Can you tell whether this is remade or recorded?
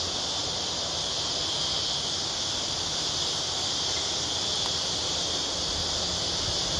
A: recorded